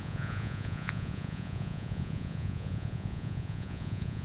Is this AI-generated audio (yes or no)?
yes